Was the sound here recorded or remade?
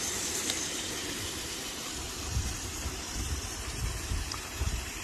remade